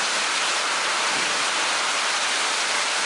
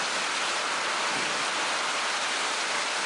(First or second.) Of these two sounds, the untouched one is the second